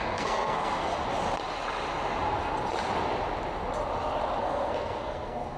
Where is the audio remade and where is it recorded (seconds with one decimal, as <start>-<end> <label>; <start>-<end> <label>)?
0.0-1.0 remade; 1.0-4.4 recorded; 4.4-5.6 remade